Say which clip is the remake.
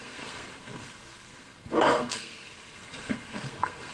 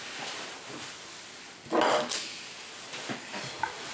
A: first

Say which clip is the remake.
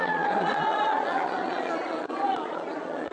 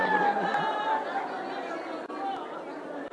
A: first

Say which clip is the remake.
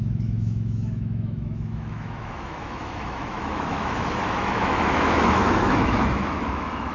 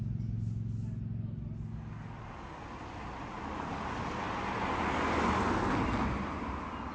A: first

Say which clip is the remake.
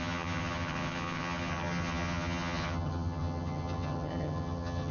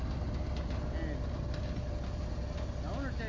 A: first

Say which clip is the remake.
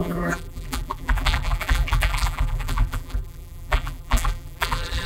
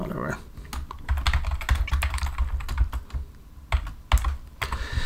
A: first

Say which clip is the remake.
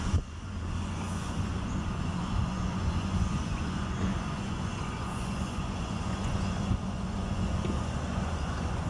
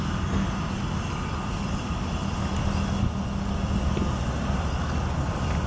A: first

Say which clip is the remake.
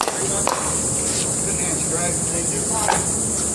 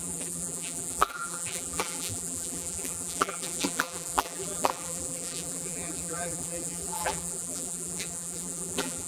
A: second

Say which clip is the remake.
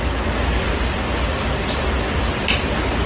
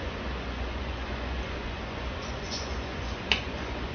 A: second